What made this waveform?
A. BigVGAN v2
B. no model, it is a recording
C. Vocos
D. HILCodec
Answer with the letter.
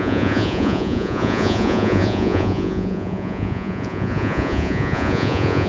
C